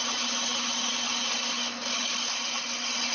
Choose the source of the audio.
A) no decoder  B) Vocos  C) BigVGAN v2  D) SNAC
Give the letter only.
A